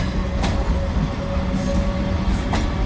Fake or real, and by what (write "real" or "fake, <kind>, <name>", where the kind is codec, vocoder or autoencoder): real